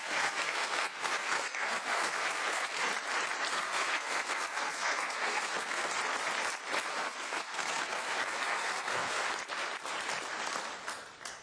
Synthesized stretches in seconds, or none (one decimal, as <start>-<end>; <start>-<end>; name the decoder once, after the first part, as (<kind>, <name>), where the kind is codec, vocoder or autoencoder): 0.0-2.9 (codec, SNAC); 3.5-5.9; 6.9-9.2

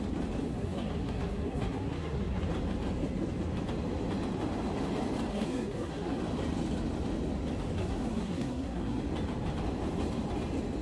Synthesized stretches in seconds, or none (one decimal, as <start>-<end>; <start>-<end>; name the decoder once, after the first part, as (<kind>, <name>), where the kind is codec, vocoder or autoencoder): 0.5-2.4 (codec, SNAC); 5.3-6.2; 7.8-9.0

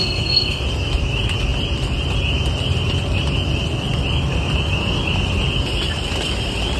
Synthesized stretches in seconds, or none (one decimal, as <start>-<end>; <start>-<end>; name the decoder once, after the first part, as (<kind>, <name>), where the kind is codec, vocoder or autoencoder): 0.0-0.6 (codec, SNAC)